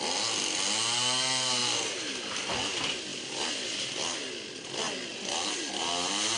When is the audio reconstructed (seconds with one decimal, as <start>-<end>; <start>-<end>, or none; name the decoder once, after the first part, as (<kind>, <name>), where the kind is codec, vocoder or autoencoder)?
none